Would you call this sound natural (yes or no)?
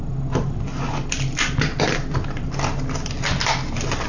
yes